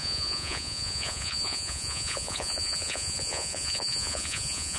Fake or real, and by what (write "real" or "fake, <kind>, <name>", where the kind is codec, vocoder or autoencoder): fake, vocoder, Vocos